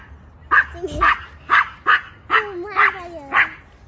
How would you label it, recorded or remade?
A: recorded